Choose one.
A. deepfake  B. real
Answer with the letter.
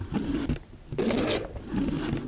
B